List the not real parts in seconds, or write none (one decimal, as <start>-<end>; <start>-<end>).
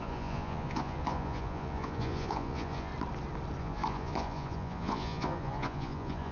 0.0-2.9; 3.6-6.3